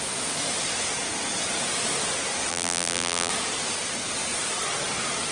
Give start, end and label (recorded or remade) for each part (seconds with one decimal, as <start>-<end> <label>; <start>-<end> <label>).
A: 0.0-2.5 recorded; 2.5-3.3 remade; 3.3-5.3 recorded